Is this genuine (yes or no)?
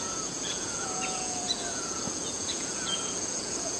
no